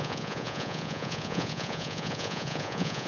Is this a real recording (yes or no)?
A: no